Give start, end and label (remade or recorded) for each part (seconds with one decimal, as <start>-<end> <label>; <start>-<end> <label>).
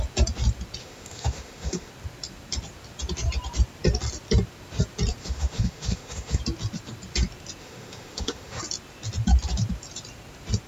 0.0-0.8 recorded; 0.8-1.9 remade; 1.9-5.2 recorded; 5.2-6.4 remade; 6.4-7.6 recorded; 7.6-8.6 remade; 8.6-10.7 recorded